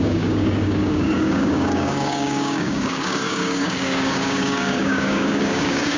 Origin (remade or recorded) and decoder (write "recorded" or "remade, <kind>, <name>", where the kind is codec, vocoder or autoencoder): remade, codec, DAC